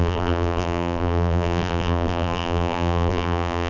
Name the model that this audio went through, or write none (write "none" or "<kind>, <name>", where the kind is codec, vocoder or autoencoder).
vocoder, BigVGAN v2